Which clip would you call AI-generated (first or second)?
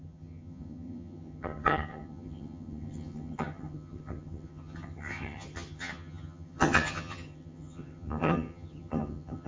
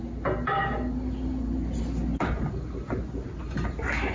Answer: first